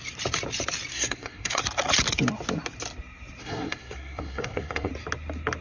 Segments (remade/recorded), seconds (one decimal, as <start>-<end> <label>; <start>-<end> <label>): 0.0-0.9 recorded; 0.9-1.6 remade; 1.6-3.4 recorded; 3.4-4.9 remade; 4.9-5.6 recorded

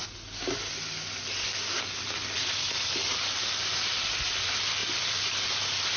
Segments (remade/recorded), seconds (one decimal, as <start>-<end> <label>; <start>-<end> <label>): 0.0-6.0 recorded

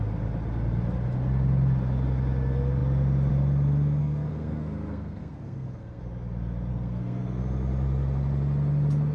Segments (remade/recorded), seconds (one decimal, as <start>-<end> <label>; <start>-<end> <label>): 0.0-4.0 recorded; 4.0-6.0 remade; 6.0-6.7 recorded; 6.7-7.4 remade; 7.4-9.1 recorded

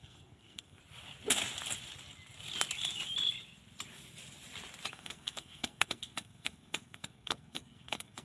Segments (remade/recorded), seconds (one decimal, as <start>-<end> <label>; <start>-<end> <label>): 0.0-0.8 remade; 0.8-4.9 recorded; 4.9-8.2 remade

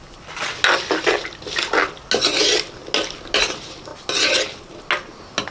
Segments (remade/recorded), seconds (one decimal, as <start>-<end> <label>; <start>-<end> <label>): 0.0-5.5 recorded

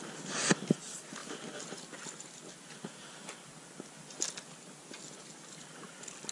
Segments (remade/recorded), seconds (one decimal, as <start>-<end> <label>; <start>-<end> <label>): 0.0-6.3 recorded

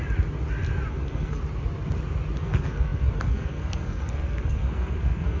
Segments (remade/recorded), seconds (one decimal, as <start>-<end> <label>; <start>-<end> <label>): 0.0-0.9 recorded; 0.9-1.4 remade; 1.4-2.4 recorded; 2.4-5.4 remade